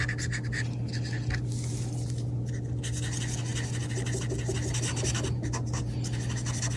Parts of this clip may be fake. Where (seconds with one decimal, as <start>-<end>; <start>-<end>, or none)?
none